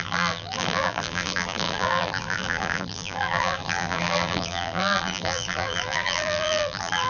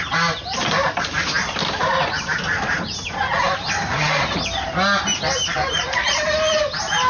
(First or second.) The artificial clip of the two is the first